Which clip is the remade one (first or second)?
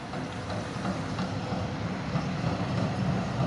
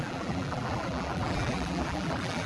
second